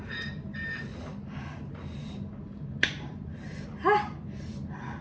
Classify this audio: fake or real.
real